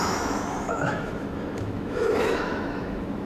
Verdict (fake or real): fake